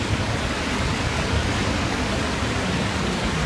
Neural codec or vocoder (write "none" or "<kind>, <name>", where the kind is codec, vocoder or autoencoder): codec, DAC